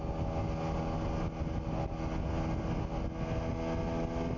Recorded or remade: recorded